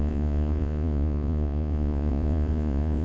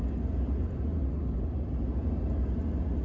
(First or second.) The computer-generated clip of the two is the first